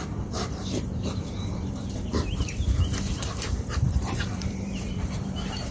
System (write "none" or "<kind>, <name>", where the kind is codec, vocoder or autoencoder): vocoder, BigVGAN v2